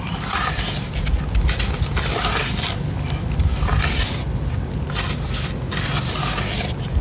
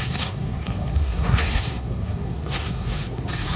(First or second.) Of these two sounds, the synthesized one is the second